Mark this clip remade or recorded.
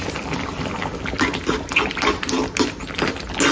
recorded